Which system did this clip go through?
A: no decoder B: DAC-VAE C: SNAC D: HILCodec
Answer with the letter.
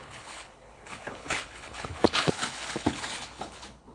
D